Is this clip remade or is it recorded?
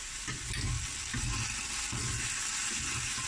recorded